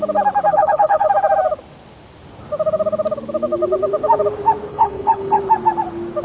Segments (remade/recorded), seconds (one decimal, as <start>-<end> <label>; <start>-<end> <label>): 0.0-0.5 recorded; 0.5-1.1 remade; 1.1-4.7 recorded; 4.7-5.4 remade; 5.4-6.2 recorded